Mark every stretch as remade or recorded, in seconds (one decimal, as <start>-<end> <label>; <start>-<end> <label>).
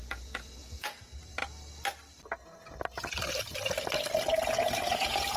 0.0-1.4 remade; 1.4-4.6 recorded; 4.6-5.4 remade